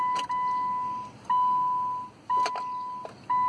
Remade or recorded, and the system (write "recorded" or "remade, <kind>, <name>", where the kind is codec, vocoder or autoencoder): recorded